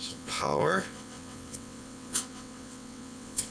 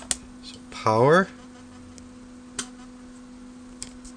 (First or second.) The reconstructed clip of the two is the first